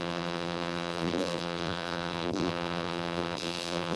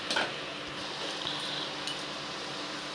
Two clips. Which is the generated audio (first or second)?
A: first